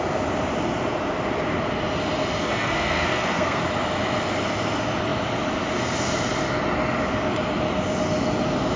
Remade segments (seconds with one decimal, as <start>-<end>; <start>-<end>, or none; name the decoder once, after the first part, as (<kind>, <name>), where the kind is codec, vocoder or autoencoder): 2.4-3.6 (codec, SNAC)